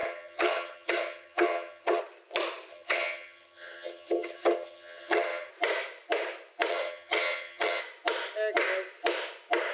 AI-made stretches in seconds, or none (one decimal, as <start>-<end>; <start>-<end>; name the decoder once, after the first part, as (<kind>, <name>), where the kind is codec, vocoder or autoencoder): 0.0-2.0 (vocoder, HiFi-GAN); 2.7-5.5; 6.7-7.8